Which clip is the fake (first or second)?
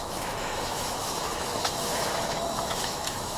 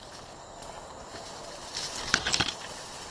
first